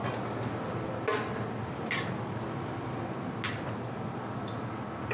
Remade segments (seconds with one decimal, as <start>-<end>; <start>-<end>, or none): none